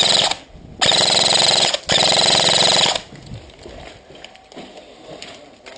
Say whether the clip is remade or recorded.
recorded